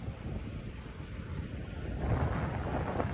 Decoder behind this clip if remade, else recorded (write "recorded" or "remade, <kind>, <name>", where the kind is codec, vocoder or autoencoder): recorded